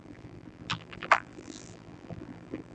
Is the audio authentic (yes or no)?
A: no